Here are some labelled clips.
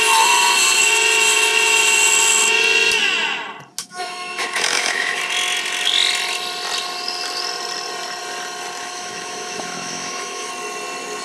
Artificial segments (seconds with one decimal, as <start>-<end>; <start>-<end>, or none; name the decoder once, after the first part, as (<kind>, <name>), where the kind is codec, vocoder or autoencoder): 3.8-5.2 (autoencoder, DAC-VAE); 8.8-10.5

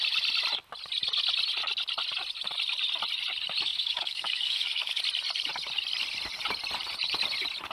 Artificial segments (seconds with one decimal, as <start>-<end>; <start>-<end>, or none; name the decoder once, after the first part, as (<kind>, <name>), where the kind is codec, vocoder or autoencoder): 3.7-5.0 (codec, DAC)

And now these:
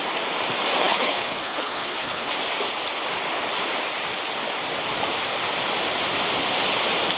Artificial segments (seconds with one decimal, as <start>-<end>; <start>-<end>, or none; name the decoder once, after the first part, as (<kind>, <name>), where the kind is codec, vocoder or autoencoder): 0.8-2.3 (codec, HILCodec)

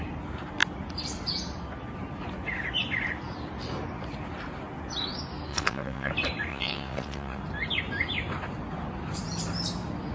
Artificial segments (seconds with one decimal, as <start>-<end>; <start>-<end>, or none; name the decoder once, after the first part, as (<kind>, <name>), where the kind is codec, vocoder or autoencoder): 5.5-6.1 (vocoder, WaveNeXt); 6.5-7.4

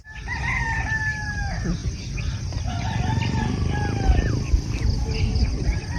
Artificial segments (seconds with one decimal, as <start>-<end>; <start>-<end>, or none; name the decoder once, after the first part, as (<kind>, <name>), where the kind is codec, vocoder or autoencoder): none

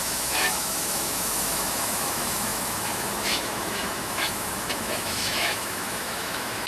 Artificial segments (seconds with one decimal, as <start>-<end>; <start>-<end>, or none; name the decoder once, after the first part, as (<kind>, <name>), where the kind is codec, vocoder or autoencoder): 0.0-6.7 (autoencoder, DAC-VAE)